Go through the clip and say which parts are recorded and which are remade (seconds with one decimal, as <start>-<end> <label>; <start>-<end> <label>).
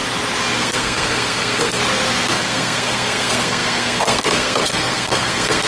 0.0-0.6 recorded; 0.6-1.8 remade; 1.8-2.3 recorded; 2.3-5.7 remade